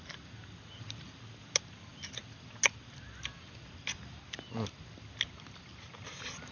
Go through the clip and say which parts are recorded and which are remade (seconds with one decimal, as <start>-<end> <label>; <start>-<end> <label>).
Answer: 0.0-6.5 recorded